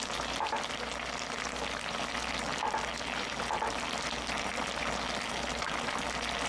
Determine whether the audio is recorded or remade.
recorded